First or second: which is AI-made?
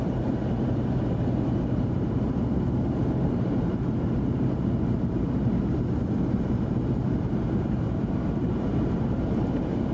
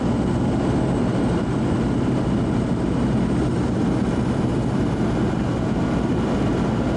first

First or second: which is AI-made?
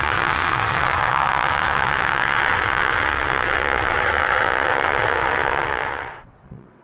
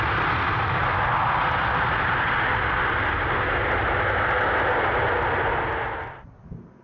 first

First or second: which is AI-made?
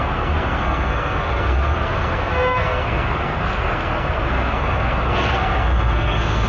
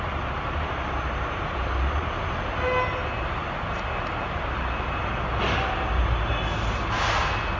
first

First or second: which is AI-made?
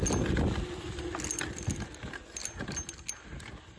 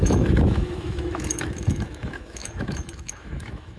second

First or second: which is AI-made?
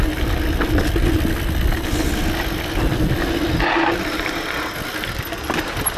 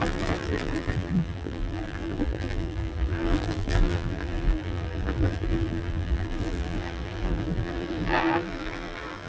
second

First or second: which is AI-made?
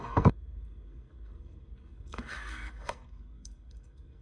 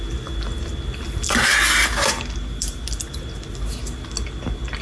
first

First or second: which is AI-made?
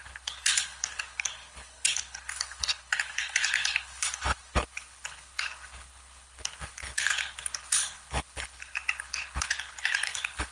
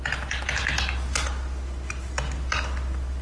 first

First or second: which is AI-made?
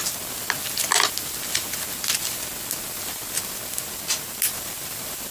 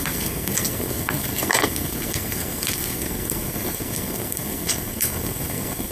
second